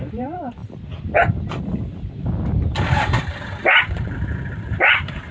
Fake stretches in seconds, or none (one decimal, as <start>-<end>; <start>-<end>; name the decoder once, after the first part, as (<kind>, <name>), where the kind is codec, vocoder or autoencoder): 0.0-0.6 (vocoder, BigVGAN v2); 3.8-5.3

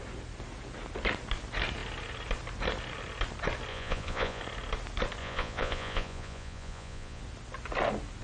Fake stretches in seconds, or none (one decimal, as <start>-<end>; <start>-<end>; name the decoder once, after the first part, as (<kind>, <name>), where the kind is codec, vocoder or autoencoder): 3.7-4.4 (vocoder, Vocos); 5.2-7.2